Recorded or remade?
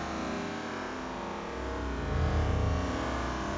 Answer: recorded